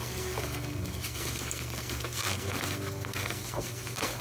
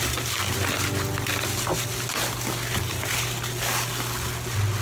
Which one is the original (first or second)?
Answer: second